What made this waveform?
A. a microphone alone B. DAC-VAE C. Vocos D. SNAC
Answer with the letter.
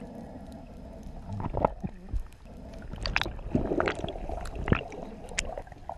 A